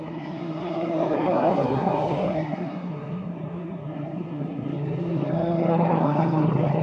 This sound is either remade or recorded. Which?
remade